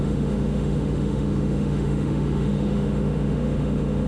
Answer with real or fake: fake